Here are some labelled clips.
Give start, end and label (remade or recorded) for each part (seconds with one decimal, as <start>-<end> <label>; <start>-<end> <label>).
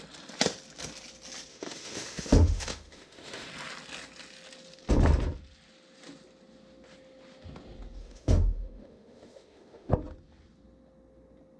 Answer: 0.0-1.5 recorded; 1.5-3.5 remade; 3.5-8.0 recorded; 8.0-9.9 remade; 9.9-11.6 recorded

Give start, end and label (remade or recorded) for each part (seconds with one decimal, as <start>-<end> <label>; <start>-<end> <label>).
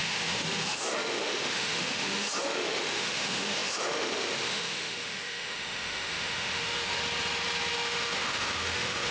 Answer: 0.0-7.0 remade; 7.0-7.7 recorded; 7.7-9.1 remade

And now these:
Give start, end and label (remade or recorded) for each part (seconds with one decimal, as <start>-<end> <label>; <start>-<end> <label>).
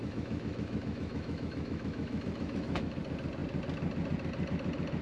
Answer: 0.0-3.0 remade; 3.0-5.0 recorded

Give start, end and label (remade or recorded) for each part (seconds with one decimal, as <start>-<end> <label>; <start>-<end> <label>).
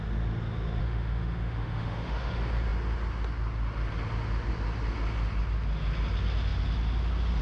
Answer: 0.0-0.8 recorded; 0.8-2.3 remade; 2.3-7.4 recorded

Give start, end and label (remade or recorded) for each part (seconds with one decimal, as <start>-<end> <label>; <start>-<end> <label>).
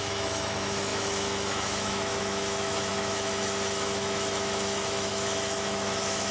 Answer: 0.0-6.3 remade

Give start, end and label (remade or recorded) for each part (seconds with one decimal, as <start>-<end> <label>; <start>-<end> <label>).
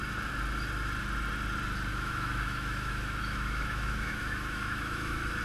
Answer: 0.0-1.9 recorded; 1.9-5.4 remade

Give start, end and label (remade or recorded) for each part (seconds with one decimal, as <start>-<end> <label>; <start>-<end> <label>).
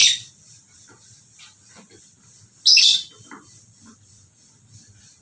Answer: 0.0-5.2 recorded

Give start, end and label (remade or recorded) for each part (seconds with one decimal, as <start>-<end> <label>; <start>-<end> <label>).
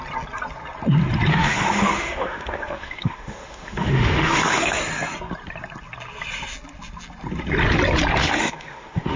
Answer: 0.0-1.3 recorded; 1.3-4.8 remade; 4.8-8.2 recorded; 8.2-9.2 remade